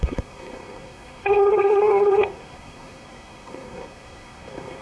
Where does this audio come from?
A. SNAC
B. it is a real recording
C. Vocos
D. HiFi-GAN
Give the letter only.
A